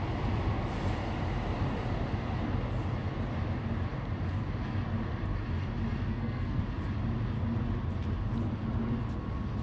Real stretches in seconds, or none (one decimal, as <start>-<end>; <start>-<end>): 0.0-6.1; 6.6-9.6